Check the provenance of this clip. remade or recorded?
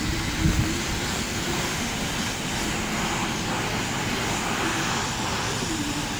recorded